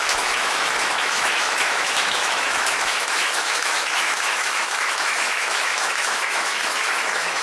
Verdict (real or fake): fake